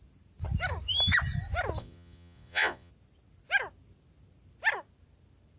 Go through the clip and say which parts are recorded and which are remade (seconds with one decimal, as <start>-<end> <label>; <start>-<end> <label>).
0.0-1.8 recorded; 1.8-2.9 remade; 2.9-5.6 recorded